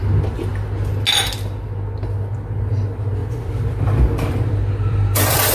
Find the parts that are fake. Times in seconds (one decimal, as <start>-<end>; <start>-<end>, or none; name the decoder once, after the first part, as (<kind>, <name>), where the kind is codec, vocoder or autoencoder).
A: 3.2-5.5 (vocoder, BigVGAN v2)